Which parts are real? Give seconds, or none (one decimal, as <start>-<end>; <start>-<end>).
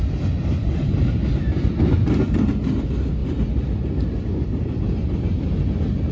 0.0-6.1